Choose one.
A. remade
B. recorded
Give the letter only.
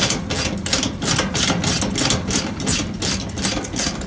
B